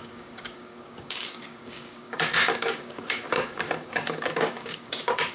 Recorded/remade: remade